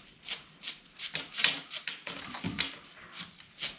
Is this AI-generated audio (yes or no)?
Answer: no